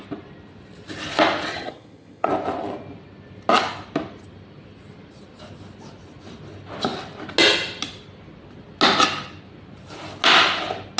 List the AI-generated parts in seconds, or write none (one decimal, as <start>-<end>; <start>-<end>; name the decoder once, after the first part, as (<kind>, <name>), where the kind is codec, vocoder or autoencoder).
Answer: 1.5-2.3 (vocoder, HiFi-GAN)